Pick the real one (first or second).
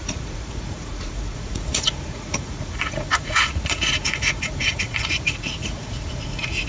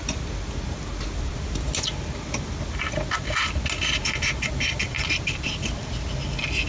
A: second